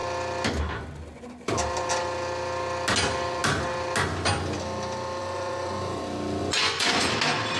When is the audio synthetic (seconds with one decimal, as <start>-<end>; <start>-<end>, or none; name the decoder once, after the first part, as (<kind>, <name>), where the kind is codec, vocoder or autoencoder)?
5.2-6.0 (vocoder, Vocos); 6.4-7.1